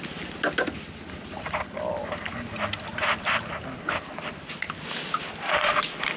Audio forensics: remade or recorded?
recorded